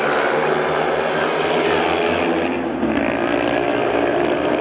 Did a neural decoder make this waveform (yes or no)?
no